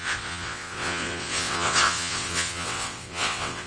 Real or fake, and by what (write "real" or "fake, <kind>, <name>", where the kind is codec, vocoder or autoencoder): fake, vocoder, WaveNeXt